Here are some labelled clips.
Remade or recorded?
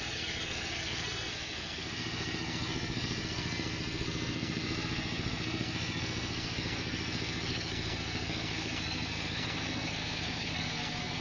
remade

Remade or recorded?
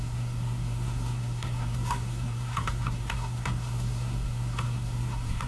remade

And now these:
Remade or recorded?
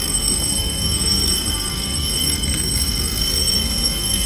remade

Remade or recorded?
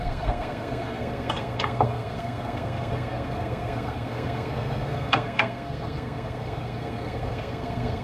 remade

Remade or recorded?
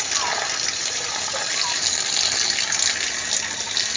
recorded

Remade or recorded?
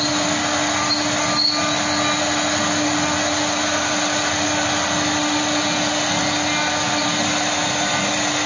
recorded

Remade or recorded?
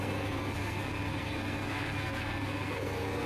remade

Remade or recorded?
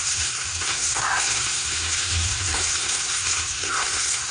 remade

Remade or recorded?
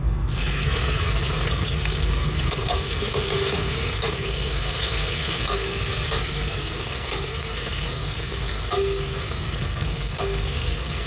remade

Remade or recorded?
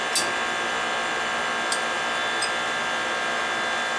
recorded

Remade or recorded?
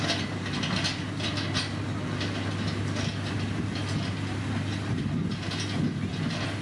recorded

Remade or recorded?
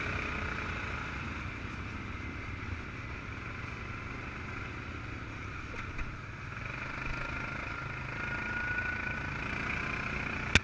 recorded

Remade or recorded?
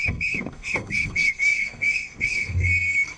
remade